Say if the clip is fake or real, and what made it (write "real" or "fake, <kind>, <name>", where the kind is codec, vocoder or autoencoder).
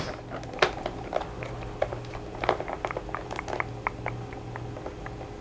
real